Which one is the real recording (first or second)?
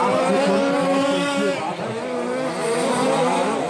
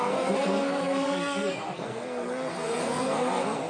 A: first